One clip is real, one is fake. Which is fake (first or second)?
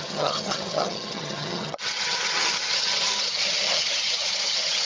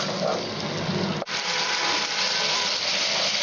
first